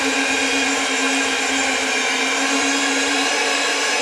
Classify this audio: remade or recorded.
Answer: remade